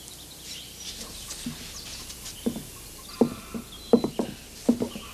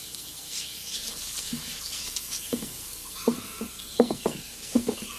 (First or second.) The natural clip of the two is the first